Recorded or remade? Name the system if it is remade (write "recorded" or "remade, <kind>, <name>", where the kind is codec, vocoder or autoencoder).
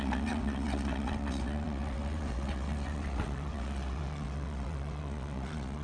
remade, vocoder, WaveNeXt